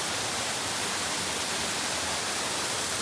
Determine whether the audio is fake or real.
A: real